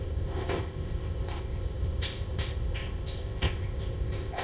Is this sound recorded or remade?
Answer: remade